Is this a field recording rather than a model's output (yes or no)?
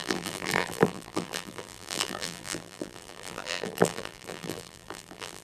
no